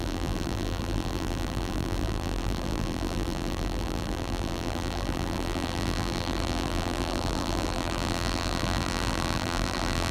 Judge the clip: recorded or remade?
remade